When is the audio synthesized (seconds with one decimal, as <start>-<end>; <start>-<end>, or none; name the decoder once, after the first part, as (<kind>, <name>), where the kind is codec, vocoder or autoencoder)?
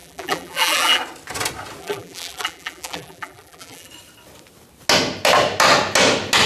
0.0-1.0 (vocoder, BigVGAN v2); 1.8-3.9